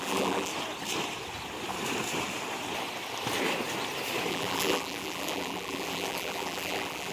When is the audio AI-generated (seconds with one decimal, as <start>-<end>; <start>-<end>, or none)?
0.0-0.5; 4.3-7.1